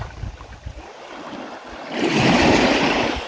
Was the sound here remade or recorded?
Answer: recorded